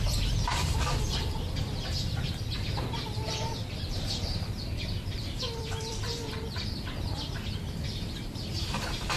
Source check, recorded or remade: remade